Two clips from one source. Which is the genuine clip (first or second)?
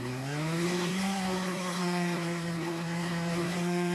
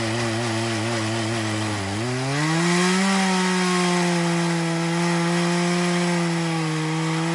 second